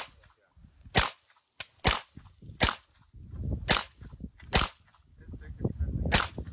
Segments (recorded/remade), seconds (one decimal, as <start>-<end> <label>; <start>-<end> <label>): 0.0-6.5 recorded